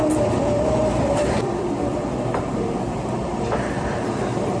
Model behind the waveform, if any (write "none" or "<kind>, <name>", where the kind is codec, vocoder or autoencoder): vocoder, BigVGAN v2